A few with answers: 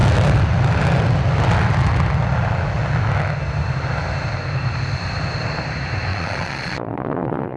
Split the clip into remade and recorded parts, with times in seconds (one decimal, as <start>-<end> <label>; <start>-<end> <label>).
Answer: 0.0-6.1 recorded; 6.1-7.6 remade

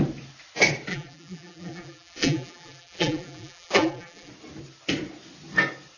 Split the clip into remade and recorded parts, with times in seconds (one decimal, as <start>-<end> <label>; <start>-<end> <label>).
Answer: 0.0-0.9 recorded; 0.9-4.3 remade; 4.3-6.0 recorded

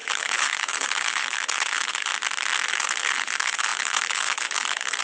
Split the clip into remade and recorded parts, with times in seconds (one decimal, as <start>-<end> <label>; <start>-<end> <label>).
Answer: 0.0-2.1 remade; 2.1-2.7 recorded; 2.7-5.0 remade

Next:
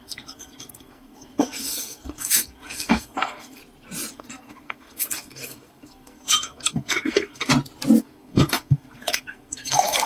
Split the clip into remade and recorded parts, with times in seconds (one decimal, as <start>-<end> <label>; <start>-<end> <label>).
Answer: 0.0-3.6 remade; 3.6-4.1 recorded; 4.1-7.5 remade; 7.5-8.0 recorded; 8.0-10.1 remade

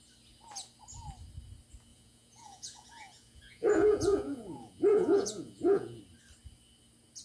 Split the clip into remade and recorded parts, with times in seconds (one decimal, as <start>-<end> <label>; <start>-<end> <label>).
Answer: 0.0-1.9 recorded; 1.9-6.0 remade; 6.0-7.2 recorded

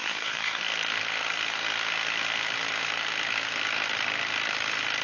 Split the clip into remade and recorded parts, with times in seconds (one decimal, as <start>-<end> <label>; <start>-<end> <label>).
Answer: 0.0-0.6 remade; 0.6-5.0 recorded

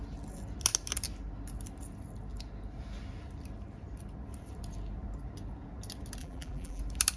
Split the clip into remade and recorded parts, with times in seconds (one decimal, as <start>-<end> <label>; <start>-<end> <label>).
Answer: 0.0-6.2 recorded; 6.2-6.8 remade; 6.8-7.2 recorded

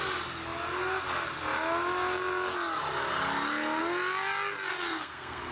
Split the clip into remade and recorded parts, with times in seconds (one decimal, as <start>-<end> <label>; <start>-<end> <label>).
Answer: 0.0-4.7 recorded; 4.7-5.5 remade